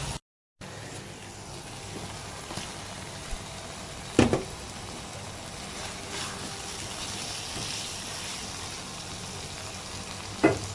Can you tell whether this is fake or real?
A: real